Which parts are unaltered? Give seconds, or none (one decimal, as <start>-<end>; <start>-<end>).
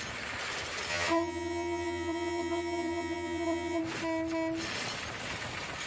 0.0-0.9; 3.8-5.9